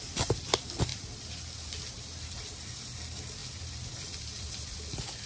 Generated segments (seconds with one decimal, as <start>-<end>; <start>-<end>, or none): 0.9-2.8; 3.4-5.3